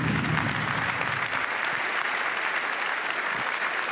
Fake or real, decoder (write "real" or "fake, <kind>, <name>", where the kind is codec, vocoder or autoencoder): real